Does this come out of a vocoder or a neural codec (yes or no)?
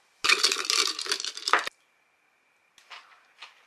no